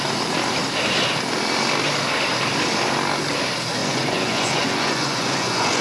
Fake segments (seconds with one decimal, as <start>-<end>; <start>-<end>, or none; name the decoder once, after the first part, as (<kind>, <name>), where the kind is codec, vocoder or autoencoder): 3.8-5.8 (vocoder, Vocos)